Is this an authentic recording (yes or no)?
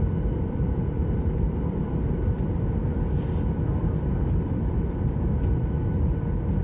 no